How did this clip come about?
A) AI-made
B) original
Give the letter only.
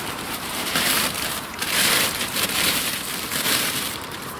A